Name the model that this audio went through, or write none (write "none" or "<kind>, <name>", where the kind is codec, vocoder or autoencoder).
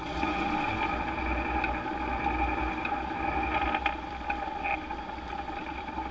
none